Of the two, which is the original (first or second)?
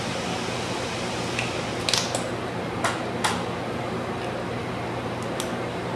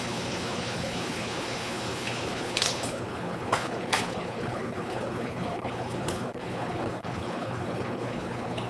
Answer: first